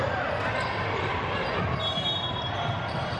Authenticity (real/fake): real